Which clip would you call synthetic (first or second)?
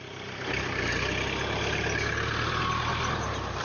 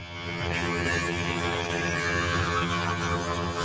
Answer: second